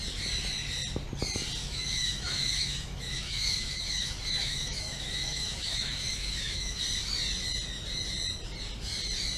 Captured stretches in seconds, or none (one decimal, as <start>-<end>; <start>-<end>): 0.0-1.6; 6.8-9.4